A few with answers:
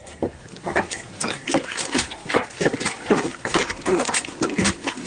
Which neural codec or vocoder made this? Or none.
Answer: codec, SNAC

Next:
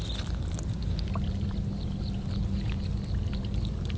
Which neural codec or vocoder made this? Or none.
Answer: none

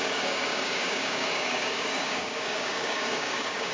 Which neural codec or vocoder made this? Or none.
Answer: codec, DAC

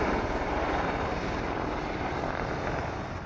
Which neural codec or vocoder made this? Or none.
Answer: vocoder, BigVGAN v2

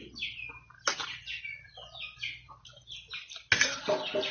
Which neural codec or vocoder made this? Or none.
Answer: none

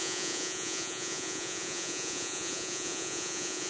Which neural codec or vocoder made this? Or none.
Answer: vocoder, Vocos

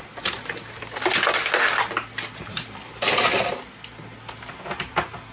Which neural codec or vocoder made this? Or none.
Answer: none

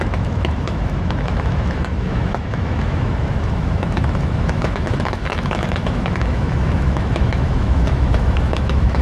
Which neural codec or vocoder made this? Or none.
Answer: autoencoder, DAC-VAE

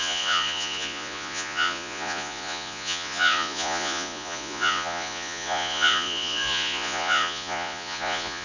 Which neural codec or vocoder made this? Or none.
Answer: vocoder, Vocos